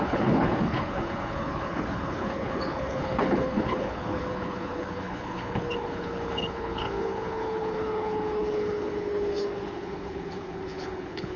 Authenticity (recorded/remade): remade